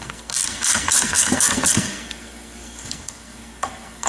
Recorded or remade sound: remade